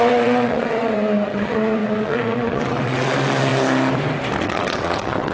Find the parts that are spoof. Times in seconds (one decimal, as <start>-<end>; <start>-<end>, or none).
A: 0.0-3.5; 4.4-5.3